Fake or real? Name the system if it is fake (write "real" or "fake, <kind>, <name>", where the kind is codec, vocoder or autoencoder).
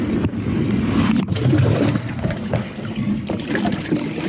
real